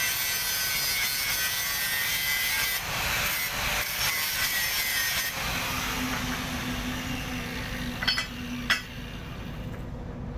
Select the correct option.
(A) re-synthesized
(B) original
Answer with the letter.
B